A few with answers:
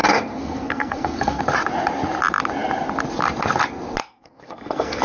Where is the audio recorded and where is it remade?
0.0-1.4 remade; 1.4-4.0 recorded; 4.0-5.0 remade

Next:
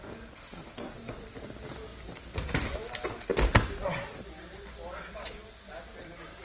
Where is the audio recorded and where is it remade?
0.0-6.4 recorded

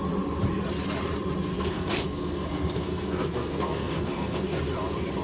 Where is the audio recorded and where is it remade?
0.0-1.5 recorded; 1.5-4.6 remade; 4.6-5.2 recorded

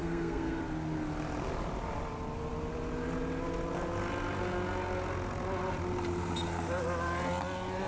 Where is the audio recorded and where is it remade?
0.0-0.6 remade; 0.6-7.9 recorded

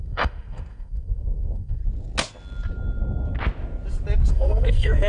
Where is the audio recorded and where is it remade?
0.0-1.8 remade; 1.8-4.3 recorded; 4.3-5.1 remade

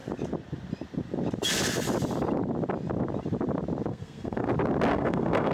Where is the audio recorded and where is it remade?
0.0-3.9 recorded; 3.9-4.5 remade; 4.5-4.9 recorded; 4.9-5.5 remade

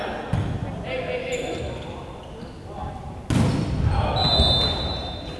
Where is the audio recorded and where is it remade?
0.0-5.4 recorded

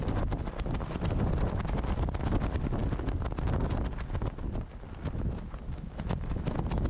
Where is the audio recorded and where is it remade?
0.0-6.9 recorded